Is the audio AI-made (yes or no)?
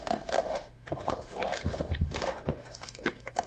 yes